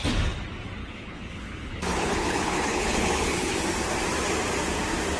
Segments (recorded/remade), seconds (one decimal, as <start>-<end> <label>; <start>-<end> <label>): 0.0-0.8 recorded; 0.8-3.6 remade; 3.6-5.2 recorded